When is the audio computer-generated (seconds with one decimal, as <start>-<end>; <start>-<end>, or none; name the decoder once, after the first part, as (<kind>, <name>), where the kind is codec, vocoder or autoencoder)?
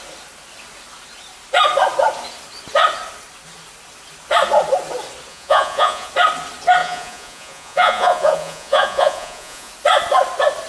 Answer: 5.3-6.1 (vocoder, Vocos); 6.8-9.7